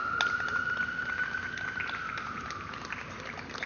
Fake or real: real